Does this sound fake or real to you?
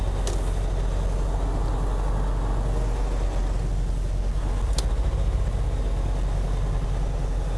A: real